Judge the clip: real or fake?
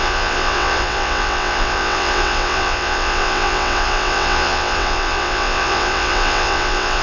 fake